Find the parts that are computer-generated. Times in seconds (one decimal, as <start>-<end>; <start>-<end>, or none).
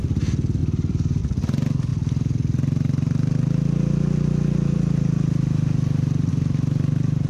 0.6-1.2